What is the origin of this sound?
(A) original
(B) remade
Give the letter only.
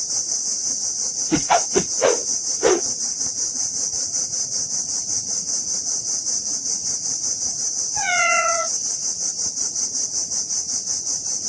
B